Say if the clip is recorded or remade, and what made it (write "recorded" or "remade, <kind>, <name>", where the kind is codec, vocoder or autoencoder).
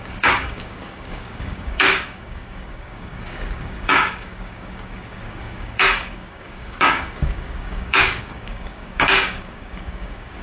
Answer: remade, codec, DAC